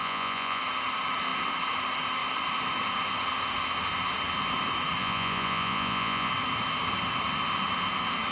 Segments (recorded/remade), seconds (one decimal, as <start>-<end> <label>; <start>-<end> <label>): 0.0-0.6 remade; 0.6-5.0 recorded; 5.0-6.3 remade; 6.3-8.3 recorded